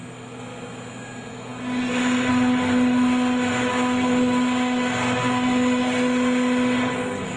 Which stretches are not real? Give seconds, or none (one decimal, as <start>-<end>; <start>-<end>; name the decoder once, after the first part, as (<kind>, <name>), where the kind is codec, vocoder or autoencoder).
none